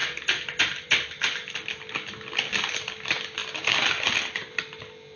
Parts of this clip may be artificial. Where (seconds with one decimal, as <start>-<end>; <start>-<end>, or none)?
none